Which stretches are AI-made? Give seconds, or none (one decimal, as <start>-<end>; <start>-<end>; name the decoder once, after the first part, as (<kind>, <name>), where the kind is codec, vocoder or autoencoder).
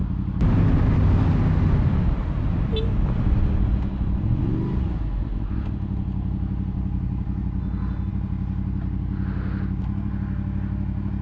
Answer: 7.6-8.1 (codec, SNAC)